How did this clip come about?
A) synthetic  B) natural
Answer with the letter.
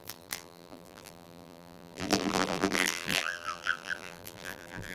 A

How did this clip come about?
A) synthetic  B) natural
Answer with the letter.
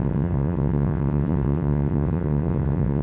A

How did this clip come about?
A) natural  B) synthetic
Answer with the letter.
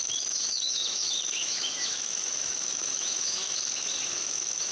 B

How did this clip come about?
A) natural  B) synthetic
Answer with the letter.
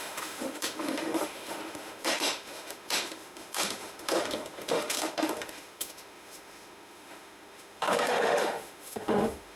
B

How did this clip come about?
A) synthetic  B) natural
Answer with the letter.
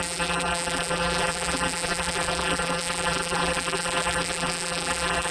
A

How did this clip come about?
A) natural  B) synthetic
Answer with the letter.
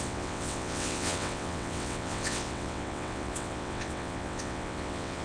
B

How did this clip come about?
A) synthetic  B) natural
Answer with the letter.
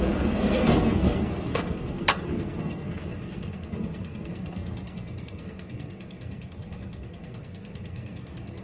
A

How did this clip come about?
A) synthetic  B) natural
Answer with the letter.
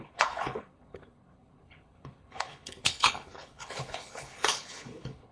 A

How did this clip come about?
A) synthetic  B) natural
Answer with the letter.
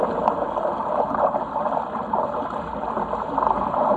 B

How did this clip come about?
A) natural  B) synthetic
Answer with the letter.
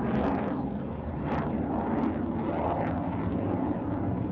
A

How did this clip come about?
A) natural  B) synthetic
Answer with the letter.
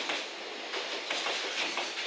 A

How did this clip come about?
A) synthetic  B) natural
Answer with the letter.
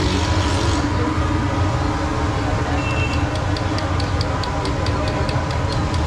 B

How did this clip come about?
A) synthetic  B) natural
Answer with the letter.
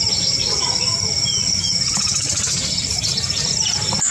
A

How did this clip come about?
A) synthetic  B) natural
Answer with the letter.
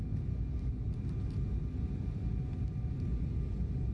B